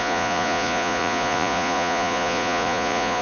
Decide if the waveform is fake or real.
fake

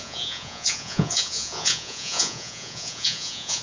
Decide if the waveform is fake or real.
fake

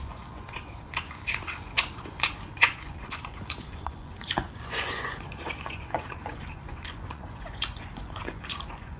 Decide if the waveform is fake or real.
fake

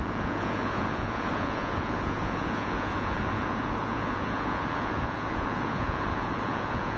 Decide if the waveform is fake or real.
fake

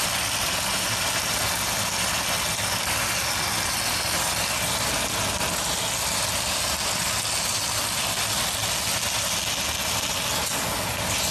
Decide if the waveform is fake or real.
real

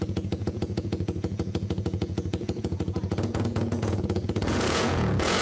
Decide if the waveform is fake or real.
fake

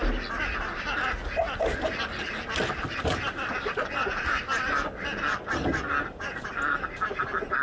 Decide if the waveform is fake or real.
real